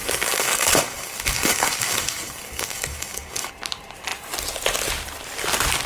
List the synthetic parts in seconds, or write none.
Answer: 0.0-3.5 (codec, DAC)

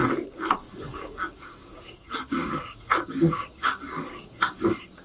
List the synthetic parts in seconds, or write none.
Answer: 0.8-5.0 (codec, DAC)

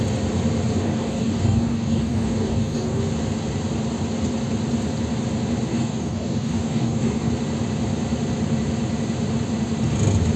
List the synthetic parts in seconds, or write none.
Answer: 0.8-3.0 (codec, DAC); 5.7-7.3

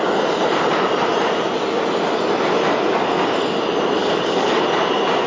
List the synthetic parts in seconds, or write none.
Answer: 4.0-4.6 (codec, DAC)

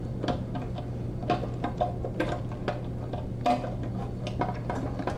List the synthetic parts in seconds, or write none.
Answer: none